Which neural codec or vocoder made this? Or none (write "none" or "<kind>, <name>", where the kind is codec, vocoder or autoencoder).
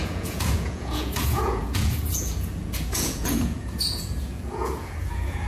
vocoder, Vocos